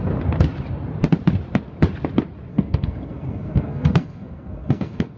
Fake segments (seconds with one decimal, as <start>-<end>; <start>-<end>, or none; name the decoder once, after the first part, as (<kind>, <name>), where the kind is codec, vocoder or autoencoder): 2.5-5.2 (codec, SNAC)